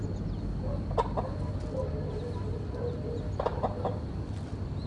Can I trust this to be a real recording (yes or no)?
yes